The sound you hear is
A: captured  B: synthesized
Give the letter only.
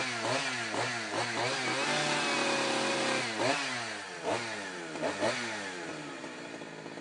A